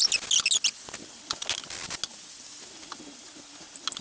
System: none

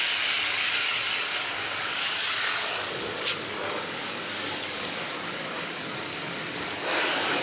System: codec, DAC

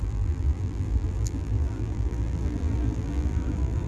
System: vocoder, BigVGAN v2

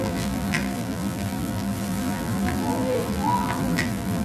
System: vocoder, BigVGAN v2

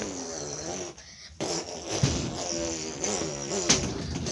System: none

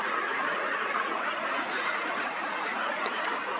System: vocoder, Vocos